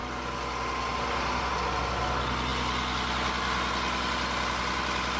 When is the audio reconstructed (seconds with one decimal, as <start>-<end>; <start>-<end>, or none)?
none